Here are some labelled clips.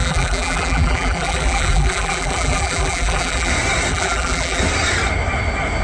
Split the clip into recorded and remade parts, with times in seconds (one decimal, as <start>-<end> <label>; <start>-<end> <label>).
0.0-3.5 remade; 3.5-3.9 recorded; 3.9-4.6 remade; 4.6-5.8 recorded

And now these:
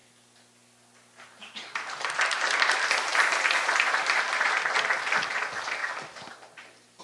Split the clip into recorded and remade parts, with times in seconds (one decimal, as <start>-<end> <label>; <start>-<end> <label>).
0.0-5.8 recorded; 5.8-7.0 remade

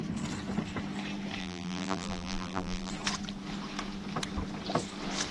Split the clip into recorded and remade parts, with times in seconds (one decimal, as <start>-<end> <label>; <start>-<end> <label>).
0.0-1.4 recorded; 1.4-2.9 remade; 2.9-5.3 recorded

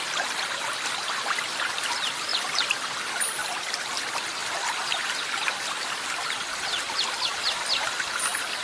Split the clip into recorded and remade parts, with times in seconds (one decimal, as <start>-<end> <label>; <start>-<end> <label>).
0.0-8.6 remade

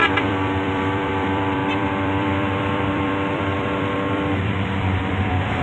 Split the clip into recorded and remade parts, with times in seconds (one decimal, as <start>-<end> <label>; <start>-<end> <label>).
0.0-5.6 remade

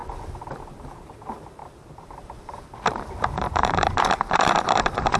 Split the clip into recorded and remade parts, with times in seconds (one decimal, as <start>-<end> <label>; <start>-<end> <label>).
0.0-5.2 remade

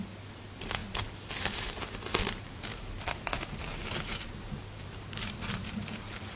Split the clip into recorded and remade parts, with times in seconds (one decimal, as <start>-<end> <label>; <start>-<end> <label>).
0.0-2.7 recorded; 2.7-6.4 remade